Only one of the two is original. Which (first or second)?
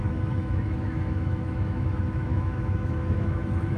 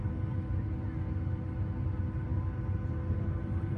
second